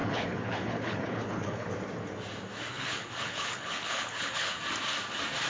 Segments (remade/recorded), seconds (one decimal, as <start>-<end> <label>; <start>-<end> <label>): 0.0-1.7 remade; 1.7-2.7 recorded; 2.7-4.6 remade; 4.6-5.5 recorded